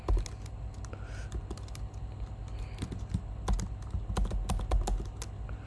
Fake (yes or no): no